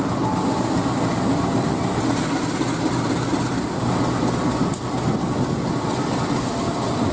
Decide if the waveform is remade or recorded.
recorded